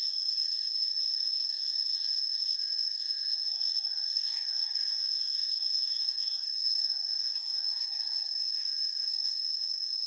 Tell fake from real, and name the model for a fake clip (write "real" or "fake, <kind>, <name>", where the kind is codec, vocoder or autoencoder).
fake, codec, SNAC